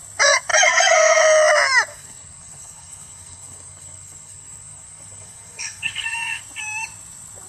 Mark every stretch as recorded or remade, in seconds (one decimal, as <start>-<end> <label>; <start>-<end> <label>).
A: 0.0-0.5 recorded; 0.5-1.2 remade; 1.2-1.9 recorded; 1.9-6.4 remade; 6.4-7.5 recorded